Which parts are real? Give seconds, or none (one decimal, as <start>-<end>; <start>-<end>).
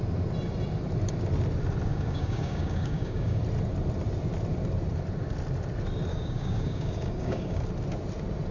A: 0.0-1.9; 3.4-6.1; 7.6-8.5